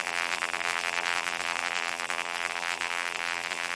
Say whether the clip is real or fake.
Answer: fake